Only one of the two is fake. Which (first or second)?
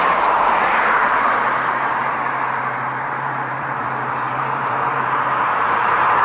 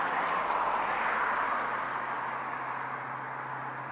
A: first